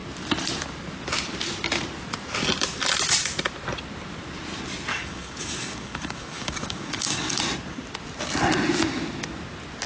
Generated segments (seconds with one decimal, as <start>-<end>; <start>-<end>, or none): 4.9-7.4